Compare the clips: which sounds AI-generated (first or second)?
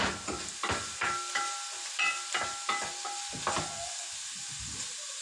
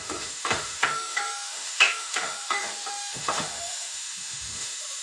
second